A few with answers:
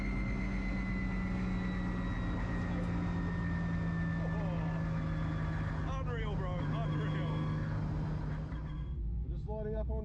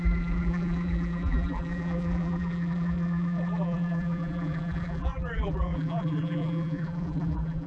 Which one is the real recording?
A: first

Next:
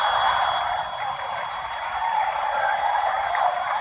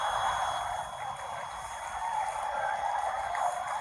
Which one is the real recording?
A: second